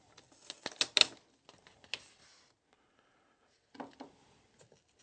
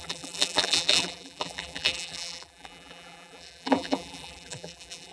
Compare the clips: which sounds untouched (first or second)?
first